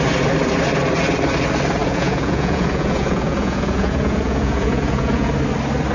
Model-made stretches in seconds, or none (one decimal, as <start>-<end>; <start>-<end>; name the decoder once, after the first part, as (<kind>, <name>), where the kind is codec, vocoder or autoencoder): 1.8-5.3 (vocoder, Vocos)